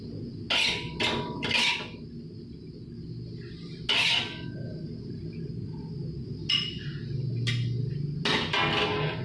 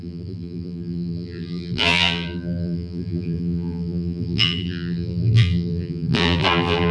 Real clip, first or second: first